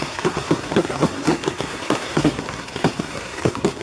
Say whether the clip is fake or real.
fake